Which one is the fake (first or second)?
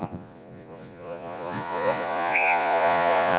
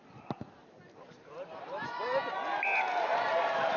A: first